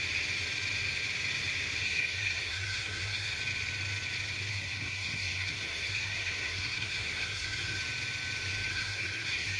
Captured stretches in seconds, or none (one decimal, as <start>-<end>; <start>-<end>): 0.0-1.8; 3.4-4.5; 7.8-8.7